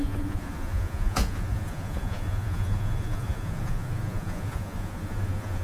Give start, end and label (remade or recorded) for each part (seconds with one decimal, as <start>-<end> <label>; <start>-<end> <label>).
0.0-5.6 remade